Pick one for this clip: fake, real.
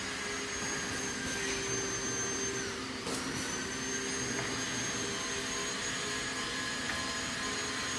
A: real